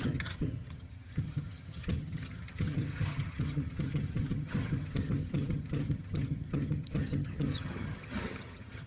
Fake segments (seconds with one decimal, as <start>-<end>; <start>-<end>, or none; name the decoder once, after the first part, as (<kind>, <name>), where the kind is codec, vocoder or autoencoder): 0.0-8.9 (vocoder, HiFi-GAN)